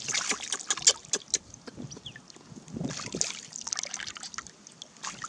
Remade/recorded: recorded